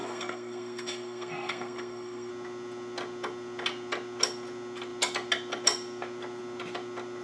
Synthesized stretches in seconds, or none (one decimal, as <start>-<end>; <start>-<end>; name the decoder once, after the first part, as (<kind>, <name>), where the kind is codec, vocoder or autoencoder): 0.0-2.3 (codec, SNAC)